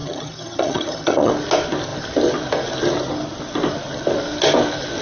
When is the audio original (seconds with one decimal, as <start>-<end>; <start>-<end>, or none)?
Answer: 1.3-5.0